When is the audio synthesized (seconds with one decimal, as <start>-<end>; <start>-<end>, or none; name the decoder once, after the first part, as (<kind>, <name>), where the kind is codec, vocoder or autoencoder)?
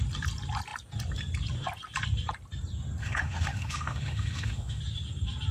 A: 3.0-4.8 (autoencoder, DAC-VAE)